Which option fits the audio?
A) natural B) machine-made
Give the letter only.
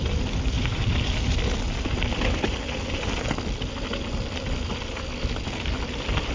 A